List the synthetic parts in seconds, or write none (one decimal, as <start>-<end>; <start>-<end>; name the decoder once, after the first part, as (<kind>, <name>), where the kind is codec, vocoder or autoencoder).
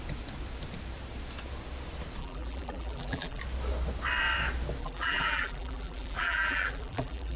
2.2-3.4 (vocoder, BigVGAN v2); 4.8-7.4